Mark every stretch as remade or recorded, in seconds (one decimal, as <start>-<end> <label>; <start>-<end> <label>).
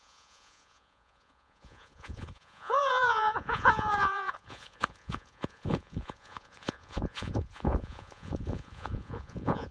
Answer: 0.0-9.7 remade